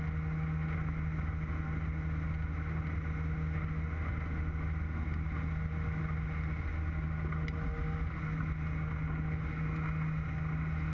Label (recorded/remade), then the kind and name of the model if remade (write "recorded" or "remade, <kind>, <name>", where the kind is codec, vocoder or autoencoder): recorded